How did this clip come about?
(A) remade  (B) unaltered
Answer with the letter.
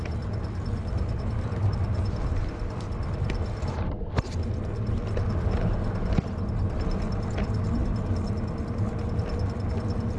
B